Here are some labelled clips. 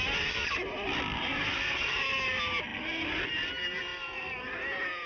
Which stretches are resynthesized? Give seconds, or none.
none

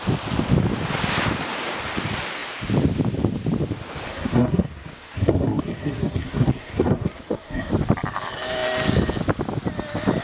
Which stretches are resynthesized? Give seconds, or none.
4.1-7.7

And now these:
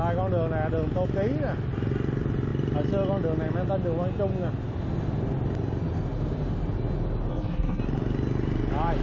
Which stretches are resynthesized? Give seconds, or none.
7.3-7.8

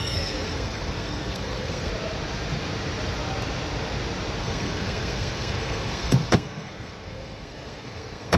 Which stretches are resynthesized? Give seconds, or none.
0.0-1.9; 4.4-8.4

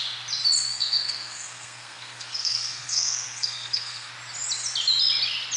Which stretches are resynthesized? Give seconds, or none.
0.7-4.1

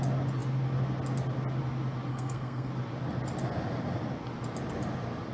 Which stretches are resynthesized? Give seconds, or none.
2.1-2.7

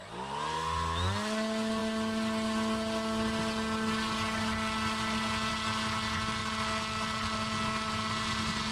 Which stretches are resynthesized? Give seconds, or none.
none